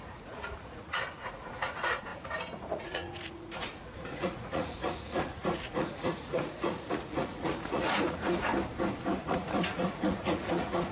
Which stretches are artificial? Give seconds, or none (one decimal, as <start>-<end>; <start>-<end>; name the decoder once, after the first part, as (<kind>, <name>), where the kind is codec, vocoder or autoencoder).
0.0-8.5 (vocoder, Vocos); 9.2-10.9